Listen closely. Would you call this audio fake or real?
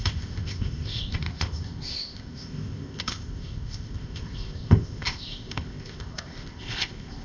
fake